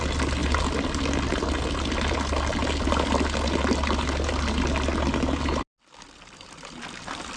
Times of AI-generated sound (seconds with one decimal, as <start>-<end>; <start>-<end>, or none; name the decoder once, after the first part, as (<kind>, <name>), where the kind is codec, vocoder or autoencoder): none